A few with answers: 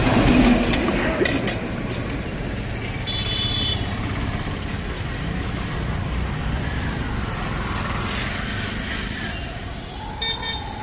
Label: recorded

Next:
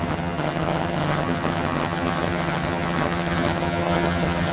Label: remade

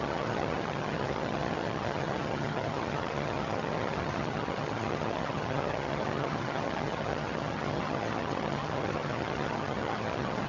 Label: remade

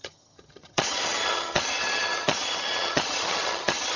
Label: remade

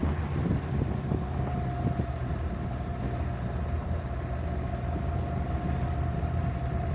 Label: recorded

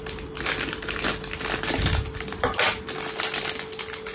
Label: recorded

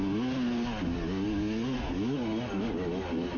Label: recorded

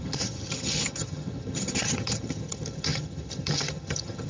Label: remade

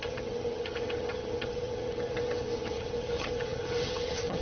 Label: remade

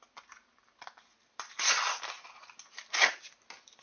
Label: recorded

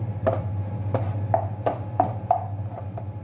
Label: recorded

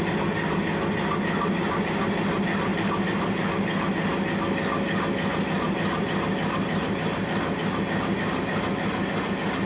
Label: recorded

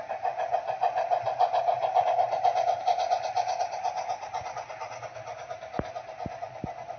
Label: recorded